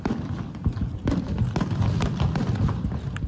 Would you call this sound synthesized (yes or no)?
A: no